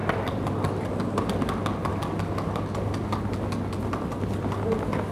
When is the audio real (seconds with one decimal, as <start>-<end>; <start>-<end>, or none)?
0.0-5.1